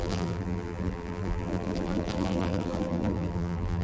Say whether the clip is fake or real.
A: fake